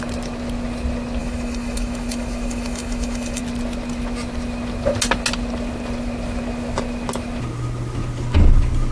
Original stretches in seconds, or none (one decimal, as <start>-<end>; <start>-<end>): 0.0-1.2; 3.4-8.9